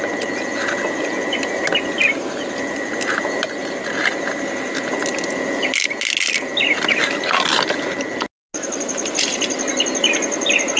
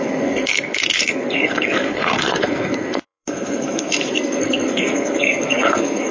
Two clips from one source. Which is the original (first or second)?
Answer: first